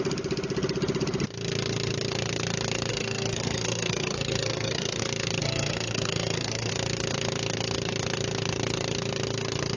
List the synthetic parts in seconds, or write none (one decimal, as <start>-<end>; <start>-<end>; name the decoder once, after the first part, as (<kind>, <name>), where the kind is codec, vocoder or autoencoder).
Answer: 2.9-5.0 (codec, SNAC); 5.4-6.7